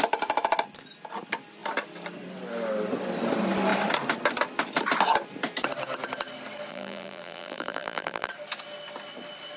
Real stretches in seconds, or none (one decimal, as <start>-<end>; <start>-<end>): 0.0-6.7; 8.3-9.6